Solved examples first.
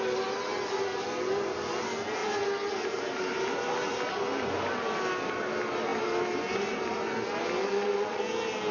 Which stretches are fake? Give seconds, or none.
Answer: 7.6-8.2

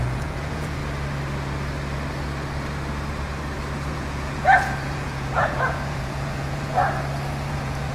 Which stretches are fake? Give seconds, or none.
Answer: 0.0-0.8; 3.9-6.8; 7.5-7.9

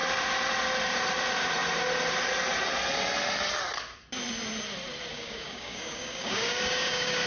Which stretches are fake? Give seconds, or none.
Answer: 5.1-7.3

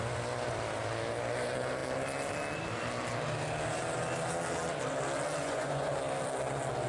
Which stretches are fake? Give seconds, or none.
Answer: 5.4-5.9

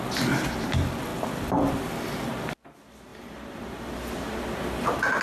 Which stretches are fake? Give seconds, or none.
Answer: 1.1-1.7; 3.1-5.2